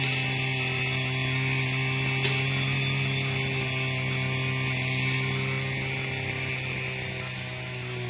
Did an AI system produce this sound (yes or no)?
no